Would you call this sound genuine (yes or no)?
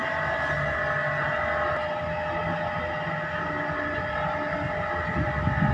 yes